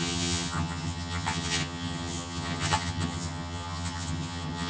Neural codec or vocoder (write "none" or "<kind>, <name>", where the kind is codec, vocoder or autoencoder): vocoder, HiFi-GAN